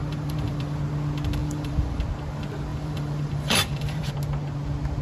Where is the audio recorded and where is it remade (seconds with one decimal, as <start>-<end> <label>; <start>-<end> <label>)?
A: 0.0-0.8 remade; 0.8-1.4 recorded; 1.4-2.0 remade; 2.0-2.7 recorded; 2.7-4.1 remade; 4.1-5.0 recorded